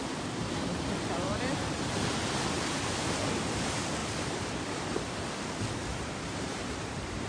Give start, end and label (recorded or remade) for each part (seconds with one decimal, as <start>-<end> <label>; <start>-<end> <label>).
0.0-1.3 recorded; 1.3-2.3 remade; 2.3-4.0 recorded; 4.0-5.2 remade; 5.2-5.8 recorded; 5.8-7.3 remade